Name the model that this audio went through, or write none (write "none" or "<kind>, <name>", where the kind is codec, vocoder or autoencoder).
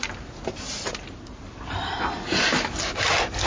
none